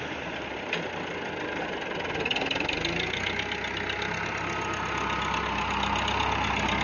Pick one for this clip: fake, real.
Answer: real